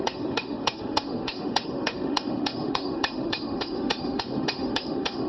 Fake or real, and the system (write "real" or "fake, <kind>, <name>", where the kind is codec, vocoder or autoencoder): fake, autoencoder, DAC-VAE